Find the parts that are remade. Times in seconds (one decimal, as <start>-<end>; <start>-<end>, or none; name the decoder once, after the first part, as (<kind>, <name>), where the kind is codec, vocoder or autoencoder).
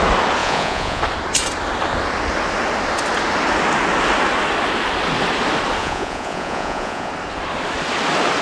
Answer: 0.4-1.0 (vocoder, Vocos); 5.8-7.1